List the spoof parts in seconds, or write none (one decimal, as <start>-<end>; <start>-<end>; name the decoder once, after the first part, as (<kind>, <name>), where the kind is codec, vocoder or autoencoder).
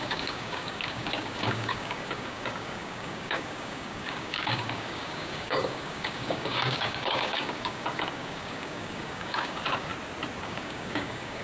0.0-9.9 (codec, DAC); 10.4-11.4